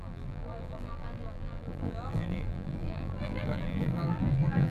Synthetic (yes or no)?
yes